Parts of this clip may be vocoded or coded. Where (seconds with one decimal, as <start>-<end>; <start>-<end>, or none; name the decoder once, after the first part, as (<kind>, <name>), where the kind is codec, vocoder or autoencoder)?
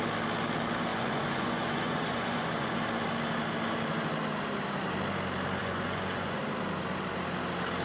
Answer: 0.9-2.8 (vocoder, Vocos); 5.6-6.4